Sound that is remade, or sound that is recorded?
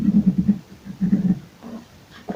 recorded